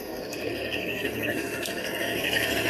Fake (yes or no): yes